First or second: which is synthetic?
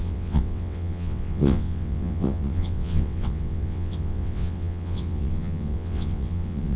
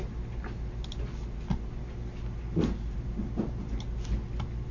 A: first